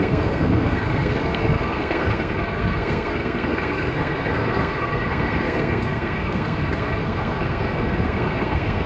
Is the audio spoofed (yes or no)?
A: yes